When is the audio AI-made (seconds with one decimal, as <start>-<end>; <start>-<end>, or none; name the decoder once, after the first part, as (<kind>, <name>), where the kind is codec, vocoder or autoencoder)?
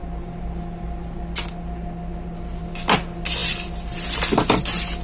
none